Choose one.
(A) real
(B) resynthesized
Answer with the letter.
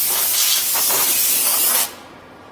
A